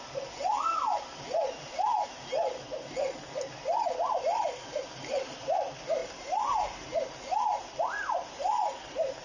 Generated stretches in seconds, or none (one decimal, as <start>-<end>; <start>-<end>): 6.0-7.2